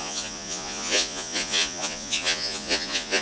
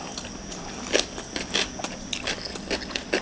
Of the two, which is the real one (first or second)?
second